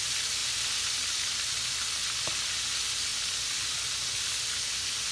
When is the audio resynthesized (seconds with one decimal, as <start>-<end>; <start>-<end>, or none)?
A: none